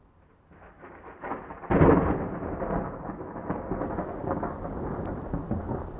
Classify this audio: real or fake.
real